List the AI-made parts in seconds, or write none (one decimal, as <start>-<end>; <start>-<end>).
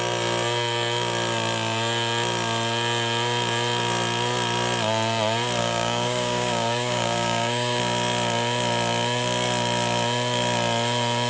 5.6-7.8